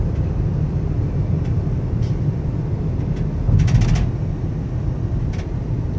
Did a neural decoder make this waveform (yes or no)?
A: no